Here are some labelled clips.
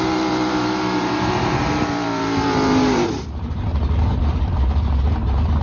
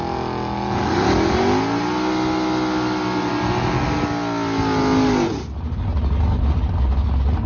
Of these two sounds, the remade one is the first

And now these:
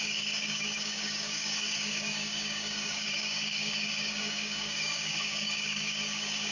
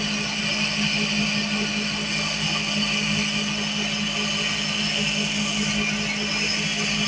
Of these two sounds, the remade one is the first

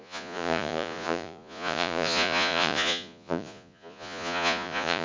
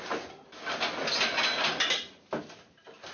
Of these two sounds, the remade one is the first